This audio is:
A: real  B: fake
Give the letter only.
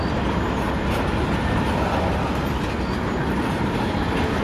A